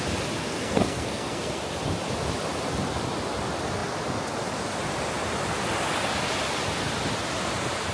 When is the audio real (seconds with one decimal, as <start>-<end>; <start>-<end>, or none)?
0.0-0.4; 1.6-7.9